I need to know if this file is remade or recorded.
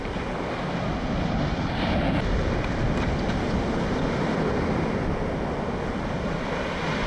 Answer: recorded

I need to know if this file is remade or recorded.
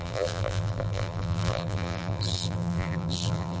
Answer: remade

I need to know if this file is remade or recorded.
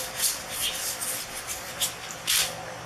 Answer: recorded